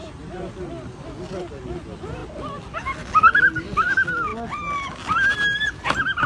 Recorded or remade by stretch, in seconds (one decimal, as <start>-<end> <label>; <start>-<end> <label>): 0.0-6.3 recorded